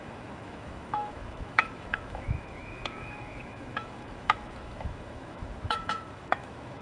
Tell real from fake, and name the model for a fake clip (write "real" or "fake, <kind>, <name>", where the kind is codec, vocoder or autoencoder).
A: fake, autoencoder, DAC-VAE